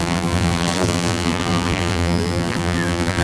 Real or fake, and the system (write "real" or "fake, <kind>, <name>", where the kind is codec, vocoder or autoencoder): fake, vocoder, BigVGAN v2